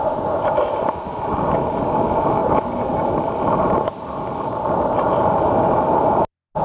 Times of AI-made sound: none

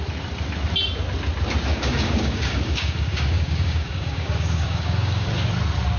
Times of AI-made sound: 1.7-5.3 (codec, DAC)

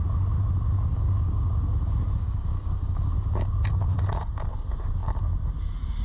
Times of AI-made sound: 0.9-1.5 (codec, DAC); 2.2-3.1

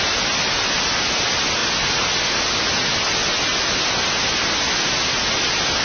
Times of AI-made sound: none

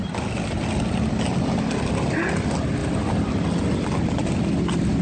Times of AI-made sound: none